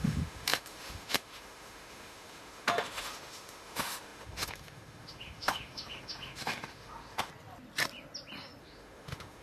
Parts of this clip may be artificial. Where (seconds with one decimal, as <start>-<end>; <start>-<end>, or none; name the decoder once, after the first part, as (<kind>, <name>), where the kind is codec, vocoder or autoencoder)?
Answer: 0.0-7.3 (autoencoder, DAC-VAE); 8.6-9.4